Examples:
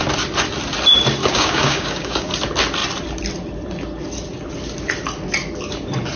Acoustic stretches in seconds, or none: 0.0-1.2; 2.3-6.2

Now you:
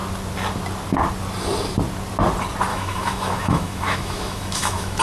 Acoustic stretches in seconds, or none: 0.0-2.7